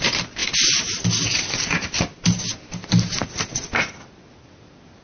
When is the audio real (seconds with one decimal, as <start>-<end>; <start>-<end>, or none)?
0.0-2.7; 3.7-5.0

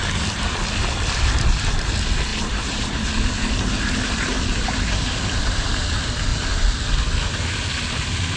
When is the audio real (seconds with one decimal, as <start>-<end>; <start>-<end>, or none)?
0.0-2.3; 3.1-8.4

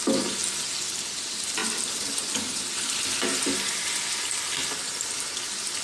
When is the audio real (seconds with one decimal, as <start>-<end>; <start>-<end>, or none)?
0.0-5.8